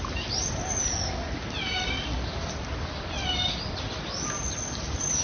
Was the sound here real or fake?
real